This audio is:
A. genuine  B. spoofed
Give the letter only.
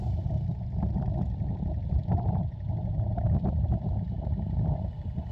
B